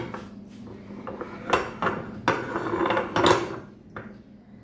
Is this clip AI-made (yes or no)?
no